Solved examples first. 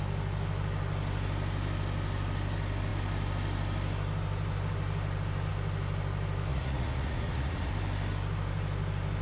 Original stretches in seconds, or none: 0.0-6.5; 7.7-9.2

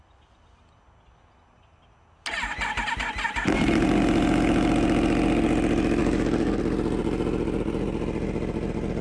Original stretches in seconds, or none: 0.0-6.0; 6.6-9.0

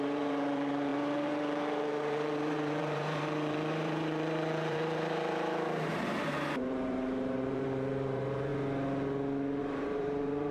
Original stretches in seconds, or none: 8.5-9.6

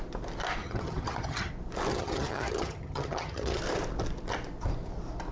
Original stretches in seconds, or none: 0.0-0.6; 1.5-1.9; 3.6-5.3

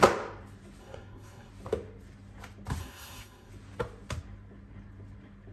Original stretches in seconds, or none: 0.0-0.8; 1.5-2.8; 3.5-5.5